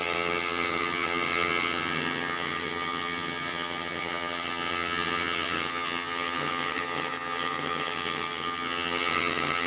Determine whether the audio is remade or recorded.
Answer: remade